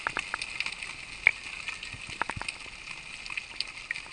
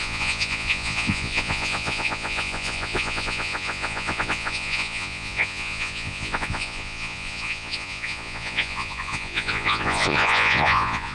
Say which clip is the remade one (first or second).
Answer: second